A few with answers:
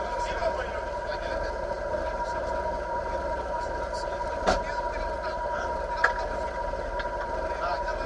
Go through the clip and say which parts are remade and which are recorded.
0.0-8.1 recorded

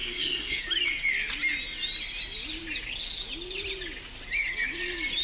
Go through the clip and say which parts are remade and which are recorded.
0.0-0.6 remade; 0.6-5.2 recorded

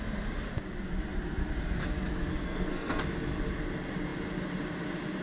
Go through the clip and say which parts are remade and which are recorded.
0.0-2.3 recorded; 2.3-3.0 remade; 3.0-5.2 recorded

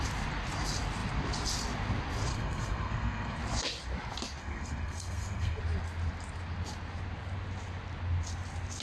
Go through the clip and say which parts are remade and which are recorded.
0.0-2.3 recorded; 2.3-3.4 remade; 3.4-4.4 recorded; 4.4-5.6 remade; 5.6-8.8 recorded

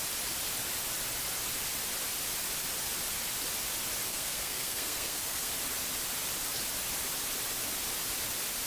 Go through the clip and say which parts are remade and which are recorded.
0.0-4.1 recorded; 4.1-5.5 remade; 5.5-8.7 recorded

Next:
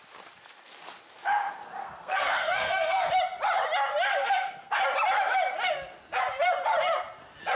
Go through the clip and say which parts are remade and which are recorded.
0.0-1.8 recorded; 1.8-3.1 remade; 3.1-4.1 recorded; 4.1-4.7 remade; 4.7-7.5 recorded